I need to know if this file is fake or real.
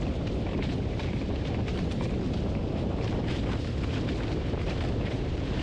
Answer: fake